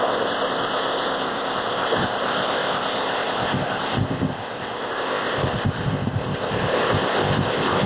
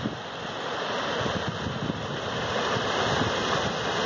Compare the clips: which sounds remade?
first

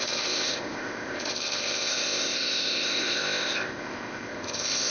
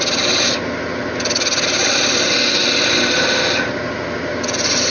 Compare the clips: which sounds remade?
first